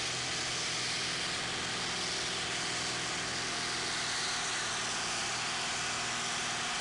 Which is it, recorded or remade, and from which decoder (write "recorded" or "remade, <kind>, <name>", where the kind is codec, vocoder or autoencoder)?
recorded